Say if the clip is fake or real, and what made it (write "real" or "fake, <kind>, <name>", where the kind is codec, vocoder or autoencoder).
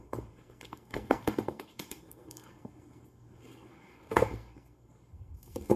fake, codec, SNAC